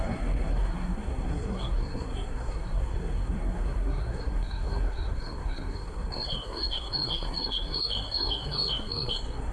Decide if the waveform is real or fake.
fake